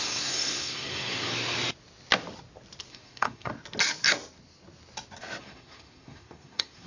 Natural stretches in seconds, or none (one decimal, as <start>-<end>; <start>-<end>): 1.3-2.9; 3.5-5.4